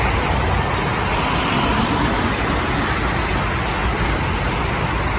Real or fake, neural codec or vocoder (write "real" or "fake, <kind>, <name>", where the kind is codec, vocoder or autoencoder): real